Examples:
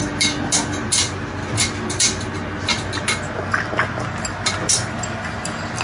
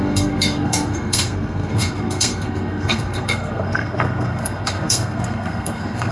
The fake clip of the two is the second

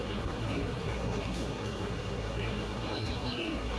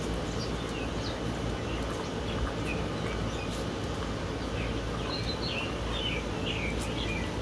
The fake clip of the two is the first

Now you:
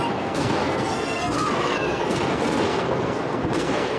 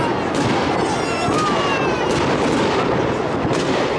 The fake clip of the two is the first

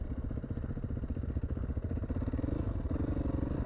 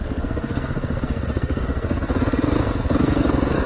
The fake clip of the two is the second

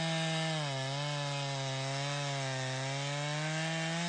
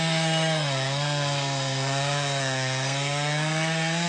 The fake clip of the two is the second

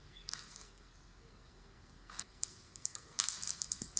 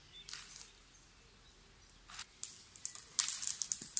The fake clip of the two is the first